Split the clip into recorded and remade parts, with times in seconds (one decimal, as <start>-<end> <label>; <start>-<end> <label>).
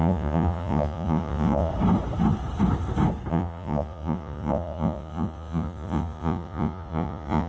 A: 0.0-1.7 remade; 1.7-3.3 recorded; 3.3-7.5 remade